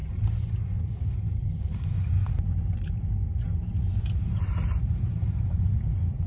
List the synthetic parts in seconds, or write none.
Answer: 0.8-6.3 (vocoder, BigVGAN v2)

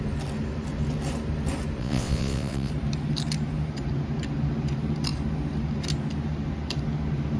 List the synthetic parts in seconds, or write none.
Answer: 1.8-2.7 (vocoder, WaveNeXt)

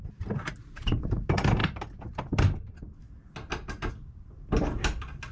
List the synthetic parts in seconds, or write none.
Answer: none

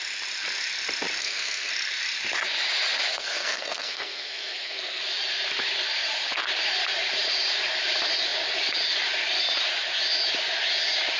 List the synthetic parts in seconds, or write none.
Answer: 1.2-1.7 (codec, SNAC); 3.1-5.0

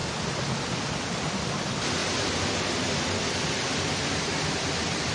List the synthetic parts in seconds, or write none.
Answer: none

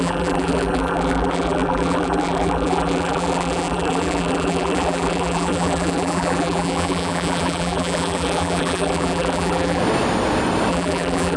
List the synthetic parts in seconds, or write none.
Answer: 0.0-9.8 (vocoder, BigVGAN v2); 10.7-11.4